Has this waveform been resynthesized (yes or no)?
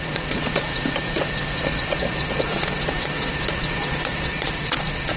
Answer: yes